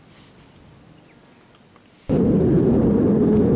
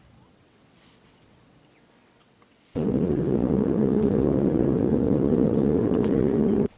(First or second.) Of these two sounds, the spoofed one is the second